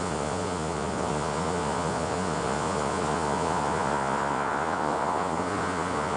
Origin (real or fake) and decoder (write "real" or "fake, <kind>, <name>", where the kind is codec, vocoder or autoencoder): fake, vocoder, Vocos